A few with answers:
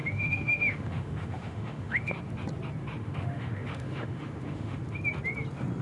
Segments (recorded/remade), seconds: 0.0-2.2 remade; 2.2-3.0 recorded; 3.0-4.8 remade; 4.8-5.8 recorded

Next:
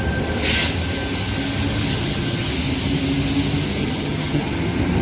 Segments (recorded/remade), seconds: 0.0-1.9 recorded; 1.9-2.5 remade; 2.5-3.8 recorded; 3.8-4.5 remade; 4.5-5.0 recorded

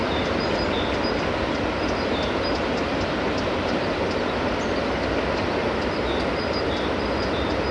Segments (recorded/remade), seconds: 0.0-0.6 remade; 0.6-7.7 recorded

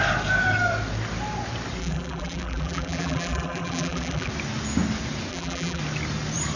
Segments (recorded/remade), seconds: 0.0-1.8 recorded; 1.8-4.3 remade; 4.3-5.3 recorded; 5.3-5.8 remade; 5.8-6.6 recorded